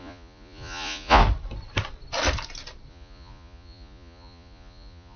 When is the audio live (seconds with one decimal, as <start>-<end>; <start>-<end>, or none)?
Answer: 1.2-2.9